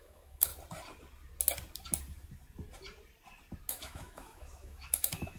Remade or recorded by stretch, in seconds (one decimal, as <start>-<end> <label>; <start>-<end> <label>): 0.0-0.5 remade; 0.5-3.7 recorded; 3.7-5.4 remade